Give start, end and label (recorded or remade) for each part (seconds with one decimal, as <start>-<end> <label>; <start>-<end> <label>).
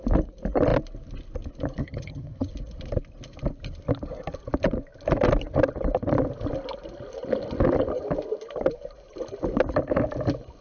0.0-1.8 recorded; 1.8-2.5 remade; 2.5-10.6 recorded